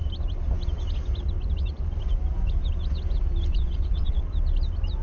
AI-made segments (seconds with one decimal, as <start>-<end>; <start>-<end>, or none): 3.5-4.2